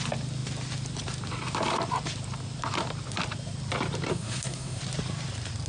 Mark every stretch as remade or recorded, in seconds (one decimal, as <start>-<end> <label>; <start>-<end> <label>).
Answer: 0.0-4.1 recorded; 4.1-4.8 remade; 4.8-5.7 recorded